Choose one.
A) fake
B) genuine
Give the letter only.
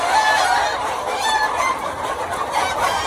A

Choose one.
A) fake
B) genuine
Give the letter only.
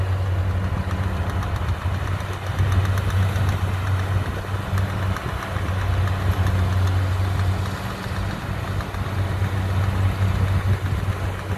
B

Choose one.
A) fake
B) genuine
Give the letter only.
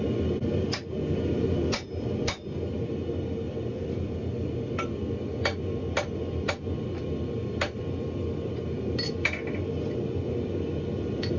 B